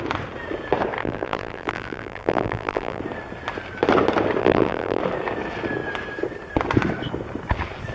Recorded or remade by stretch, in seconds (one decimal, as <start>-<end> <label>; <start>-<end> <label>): 0.0-1.0 recorded; 1.0-3.0 remade; 3.0-4.4 recorded; 4.4-5.0 remade; 5.0-7.9 recorded